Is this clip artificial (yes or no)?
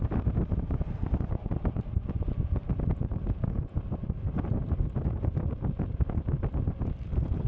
no